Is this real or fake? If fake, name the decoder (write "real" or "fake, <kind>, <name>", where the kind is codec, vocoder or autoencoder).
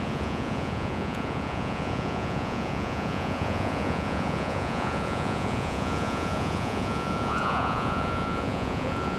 fake, vocoder, Vocos